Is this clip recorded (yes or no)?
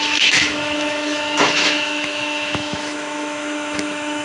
no